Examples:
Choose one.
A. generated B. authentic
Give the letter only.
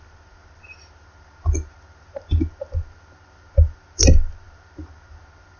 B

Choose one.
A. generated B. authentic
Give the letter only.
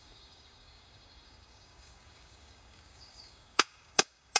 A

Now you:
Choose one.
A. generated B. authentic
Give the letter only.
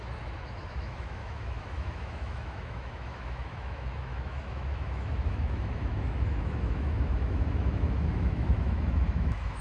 A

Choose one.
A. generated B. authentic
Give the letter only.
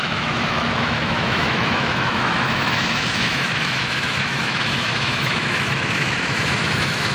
A